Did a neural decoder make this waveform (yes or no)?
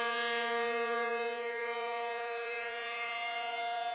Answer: yes